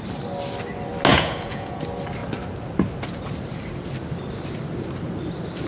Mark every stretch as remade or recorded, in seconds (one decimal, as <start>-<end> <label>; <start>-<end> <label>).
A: 0.0-1.1 recorded; 1.1-1.8 remade; 1.8-5.7 recorded